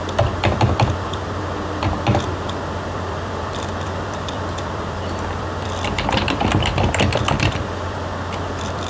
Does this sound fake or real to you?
fake